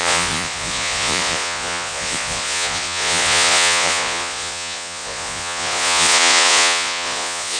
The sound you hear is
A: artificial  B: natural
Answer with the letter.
A